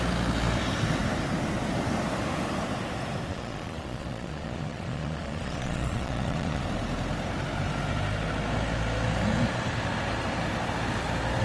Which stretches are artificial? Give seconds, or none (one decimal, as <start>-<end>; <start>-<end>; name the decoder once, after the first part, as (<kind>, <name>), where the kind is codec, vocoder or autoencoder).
3.3-6.6 (vocoder, Vocos)